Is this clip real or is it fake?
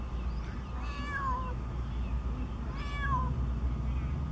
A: real